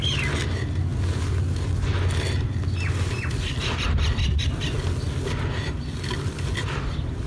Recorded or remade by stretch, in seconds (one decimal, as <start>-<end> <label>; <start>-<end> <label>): 0.0-7.3 recorded